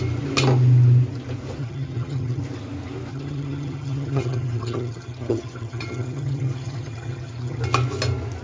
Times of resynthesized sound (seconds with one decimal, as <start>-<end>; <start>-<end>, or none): 1.6-2.4; 3.1-7.6